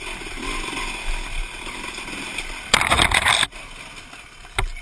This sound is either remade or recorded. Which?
recorded